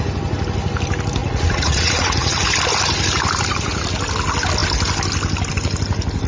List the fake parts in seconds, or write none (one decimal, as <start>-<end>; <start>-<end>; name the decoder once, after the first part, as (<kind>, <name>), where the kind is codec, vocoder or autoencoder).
1.2-2.5 (vocoder, Vocos)